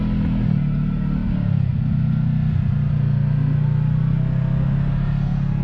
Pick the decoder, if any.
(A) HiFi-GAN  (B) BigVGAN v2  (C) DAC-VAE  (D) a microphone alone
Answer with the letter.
D